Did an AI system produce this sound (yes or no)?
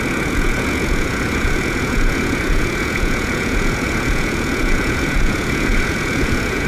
yes